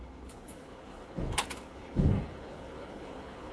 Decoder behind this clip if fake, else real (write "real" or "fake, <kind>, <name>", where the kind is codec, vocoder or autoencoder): fake, codec, HILCodec